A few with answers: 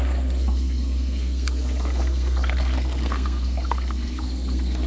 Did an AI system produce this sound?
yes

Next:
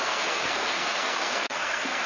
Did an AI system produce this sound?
yes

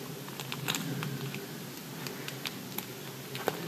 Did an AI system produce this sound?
no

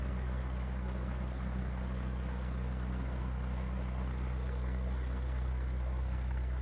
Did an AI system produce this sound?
yes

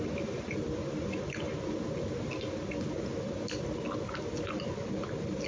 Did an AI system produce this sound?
no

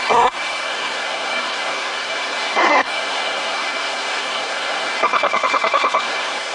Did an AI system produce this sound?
yes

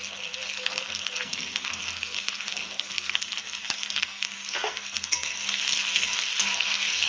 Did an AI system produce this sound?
yes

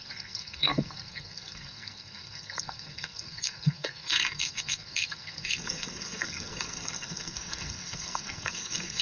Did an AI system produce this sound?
yes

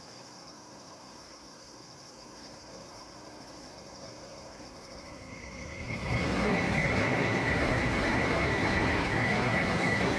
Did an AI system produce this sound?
yes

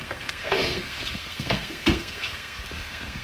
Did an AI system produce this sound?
yes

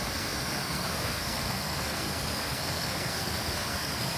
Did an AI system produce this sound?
yes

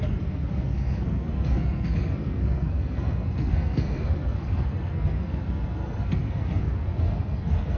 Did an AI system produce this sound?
yes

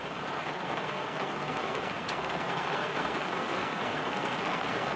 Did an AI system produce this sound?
yes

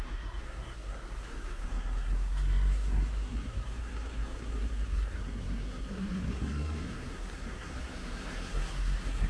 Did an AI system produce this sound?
yes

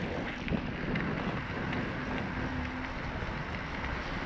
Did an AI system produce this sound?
no